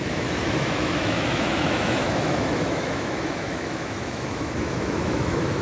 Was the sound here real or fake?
fake